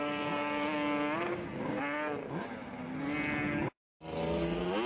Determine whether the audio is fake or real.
real